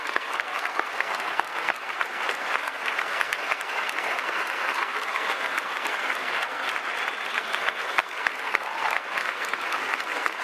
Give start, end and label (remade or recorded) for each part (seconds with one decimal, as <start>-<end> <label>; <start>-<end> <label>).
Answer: 0.0-6.7 remade; 6.7-7.3 recorded; 7.3-10.4 remade